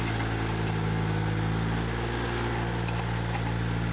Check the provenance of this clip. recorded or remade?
recorded